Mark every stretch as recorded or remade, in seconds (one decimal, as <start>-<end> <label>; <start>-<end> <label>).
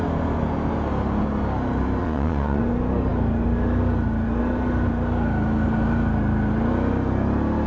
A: 0.0-2.0 recorded; 2.0-2.6 remade; 2.6-7.7 recorded